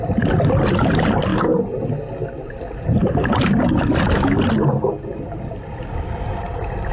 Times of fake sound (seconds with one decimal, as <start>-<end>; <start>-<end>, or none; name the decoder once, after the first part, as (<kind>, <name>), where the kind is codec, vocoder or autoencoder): 5.1-6.9 (vocoder, BigVGAN v2)